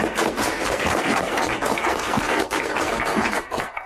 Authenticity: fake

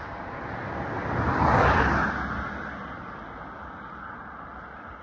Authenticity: real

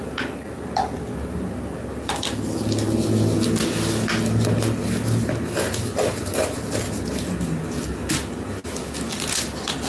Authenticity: real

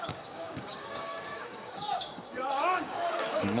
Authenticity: fake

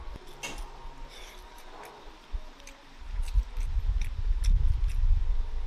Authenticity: real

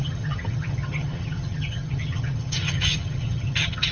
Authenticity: fake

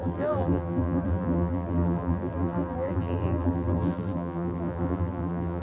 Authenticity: fake